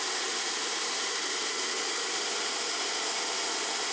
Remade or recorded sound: recorded